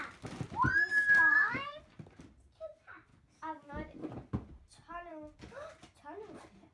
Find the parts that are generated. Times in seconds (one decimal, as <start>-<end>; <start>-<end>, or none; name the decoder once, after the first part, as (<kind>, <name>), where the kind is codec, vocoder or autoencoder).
0.9-1.8 (codec, DAC); 3.1-3.7; 5.1-5.7